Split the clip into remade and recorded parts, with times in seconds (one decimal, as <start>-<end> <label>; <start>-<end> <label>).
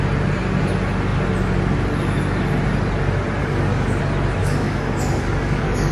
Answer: 0.0-3.4 recorded; 3.4-4.0 remade; 4.0-4.4 recorded; 4.4-5.9 remade